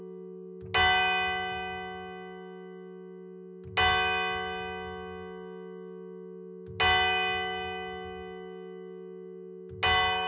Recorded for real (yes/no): yes